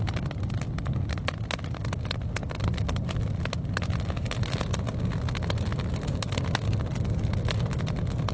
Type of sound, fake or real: real